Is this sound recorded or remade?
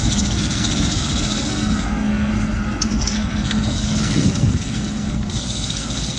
remade